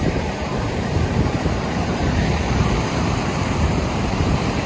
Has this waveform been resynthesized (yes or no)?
yes